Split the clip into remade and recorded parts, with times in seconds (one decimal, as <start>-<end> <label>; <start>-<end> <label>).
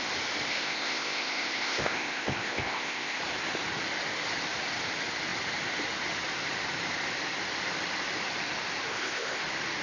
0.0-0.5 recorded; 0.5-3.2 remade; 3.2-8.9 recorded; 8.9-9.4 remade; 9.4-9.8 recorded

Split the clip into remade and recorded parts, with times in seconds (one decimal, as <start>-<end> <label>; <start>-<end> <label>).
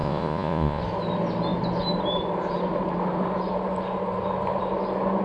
0.0-0.8 remade; 0.8-5.2 recorded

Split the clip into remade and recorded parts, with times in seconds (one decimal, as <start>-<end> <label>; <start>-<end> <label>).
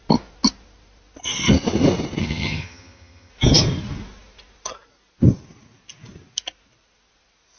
0.0-2.2 recorded; 2.2-3.3 remade; 3.3-7.6 recorded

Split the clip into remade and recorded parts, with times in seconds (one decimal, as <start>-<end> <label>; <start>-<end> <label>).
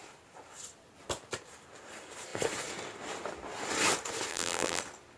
0.0-4.3 recorded; 4.3-4.8 remade; 4.8-5.2 recorded